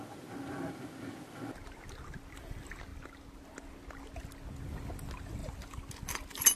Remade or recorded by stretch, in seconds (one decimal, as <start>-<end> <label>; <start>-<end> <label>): 0.0-6.6 recorded